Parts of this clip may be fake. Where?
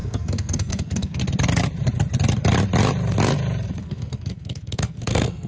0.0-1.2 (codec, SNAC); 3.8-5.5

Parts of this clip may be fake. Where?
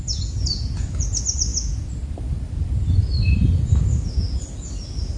none